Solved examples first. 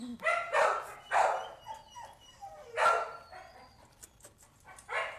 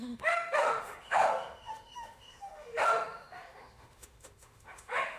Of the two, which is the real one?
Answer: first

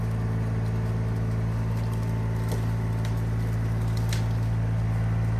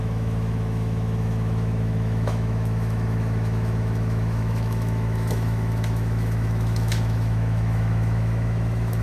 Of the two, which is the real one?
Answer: first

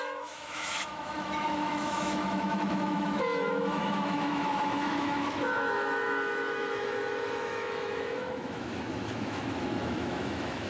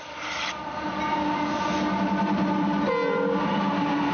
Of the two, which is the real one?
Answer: second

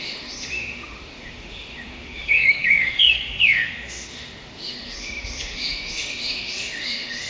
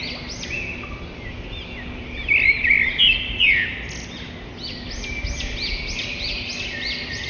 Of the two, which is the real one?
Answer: second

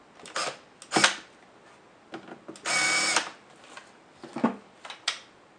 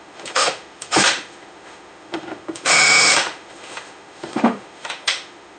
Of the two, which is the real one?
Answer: first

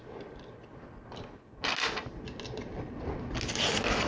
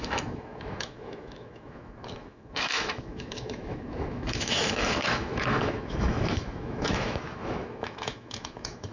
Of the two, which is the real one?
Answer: first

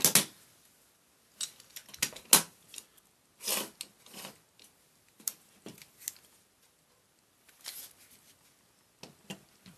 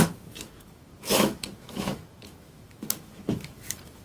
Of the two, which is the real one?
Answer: first